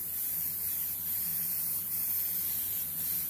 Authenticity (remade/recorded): remade